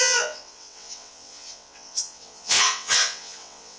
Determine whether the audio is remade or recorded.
remade